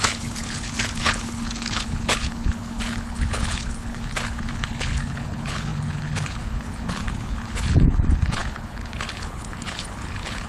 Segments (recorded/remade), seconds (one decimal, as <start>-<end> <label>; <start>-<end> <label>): 0.0-10.5 remade